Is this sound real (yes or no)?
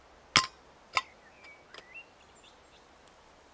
yes